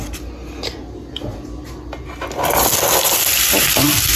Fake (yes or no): no